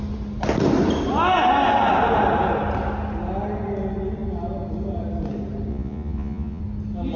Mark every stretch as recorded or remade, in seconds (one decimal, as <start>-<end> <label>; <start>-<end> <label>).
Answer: 0.0-5.7 recorded; 5.7-6.6 remade; 6.6-7.2 recorded